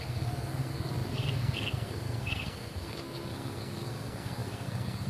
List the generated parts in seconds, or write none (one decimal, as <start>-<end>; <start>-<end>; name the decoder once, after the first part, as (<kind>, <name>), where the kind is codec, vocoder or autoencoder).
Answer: 0.0-5.1 (codec, SNAC)